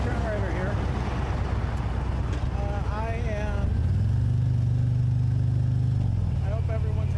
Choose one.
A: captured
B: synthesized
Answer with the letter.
A